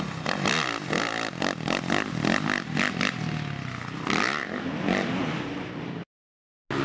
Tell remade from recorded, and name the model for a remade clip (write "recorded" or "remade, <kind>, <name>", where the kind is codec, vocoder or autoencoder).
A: recorded